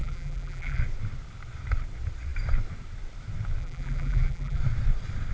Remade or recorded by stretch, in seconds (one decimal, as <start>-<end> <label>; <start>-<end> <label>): 0.0-0.8 remade; 0.8-3.6 recorded; 3.6-4.6 remade; 4.6-5.3 recorded